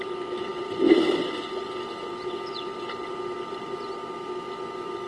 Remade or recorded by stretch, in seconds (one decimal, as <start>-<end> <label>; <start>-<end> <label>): 0.0-5.1 recorded